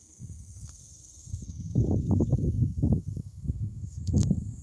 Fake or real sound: fake